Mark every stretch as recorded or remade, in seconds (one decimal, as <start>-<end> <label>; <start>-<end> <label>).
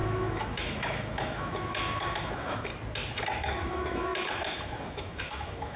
0.0-2.7 remade; 2.7-3.4 recorded; 3.4-5.8 remade